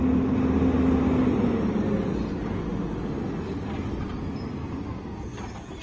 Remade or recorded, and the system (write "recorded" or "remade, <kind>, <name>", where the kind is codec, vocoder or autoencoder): recorded